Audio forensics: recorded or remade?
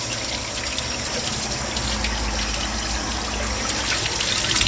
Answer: recorded